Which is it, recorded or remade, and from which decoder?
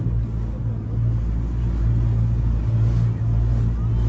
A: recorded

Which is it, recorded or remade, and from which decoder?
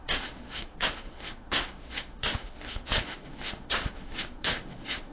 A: remade, autoencoder, DAC-VAE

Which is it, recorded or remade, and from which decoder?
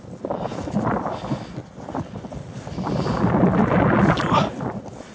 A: recorded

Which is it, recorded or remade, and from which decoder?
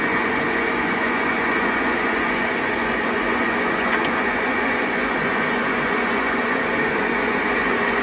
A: remade, vocoder, Vocos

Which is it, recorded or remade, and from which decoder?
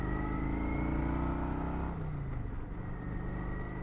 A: recorded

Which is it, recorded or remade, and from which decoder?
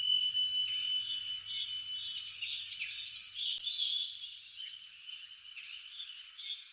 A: recorded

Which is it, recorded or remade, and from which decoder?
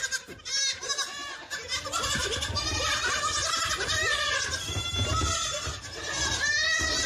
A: recorded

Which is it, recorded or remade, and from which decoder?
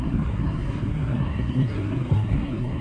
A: remade, codec, SNAC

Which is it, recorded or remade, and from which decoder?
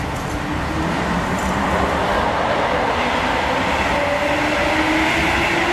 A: recorded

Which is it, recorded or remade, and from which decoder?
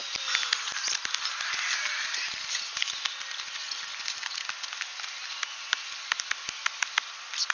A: recorded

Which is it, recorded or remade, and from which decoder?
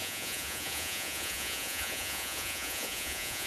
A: remade, vocoder, Vocos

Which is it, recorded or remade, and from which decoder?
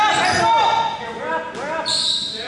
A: recorded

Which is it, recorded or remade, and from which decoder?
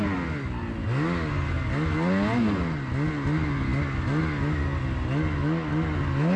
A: recorded